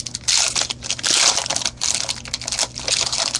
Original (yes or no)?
yes